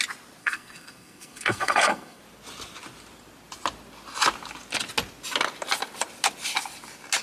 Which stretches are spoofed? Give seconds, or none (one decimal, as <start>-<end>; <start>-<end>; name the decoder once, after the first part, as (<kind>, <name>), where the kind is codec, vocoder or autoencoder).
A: 0.4-2.2 (codec, SNAC)